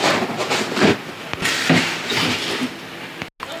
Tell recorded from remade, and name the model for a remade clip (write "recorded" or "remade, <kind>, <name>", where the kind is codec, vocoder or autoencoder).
recorded